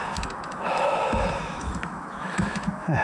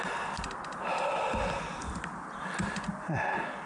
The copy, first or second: first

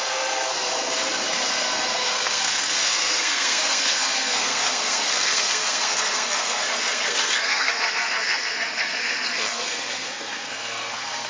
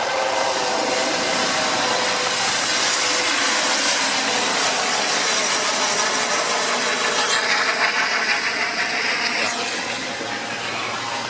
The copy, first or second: first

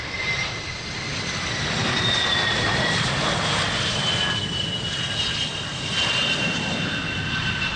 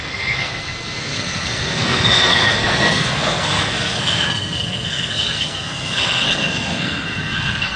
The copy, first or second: second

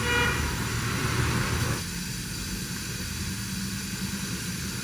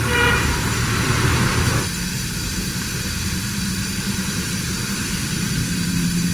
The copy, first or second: second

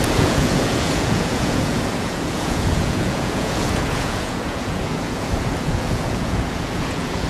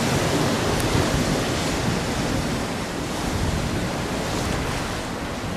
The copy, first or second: first